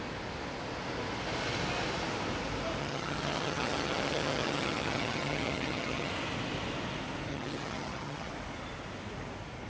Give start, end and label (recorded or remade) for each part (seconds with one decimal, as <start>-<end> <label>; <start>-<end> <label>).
0.0-2.8 recorded; 2.8-6.1 remade; 6.1-7.3 recorded; 7.3-8.3 remade; 8.3-9.7 recorded